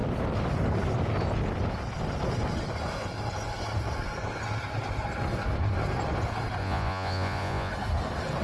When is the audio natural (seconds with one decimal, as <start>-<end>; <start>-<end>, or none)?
0.0-6.6; 7.7-8.4